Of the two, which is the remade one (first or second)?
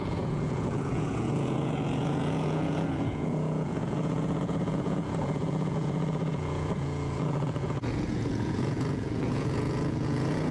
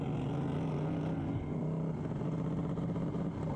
first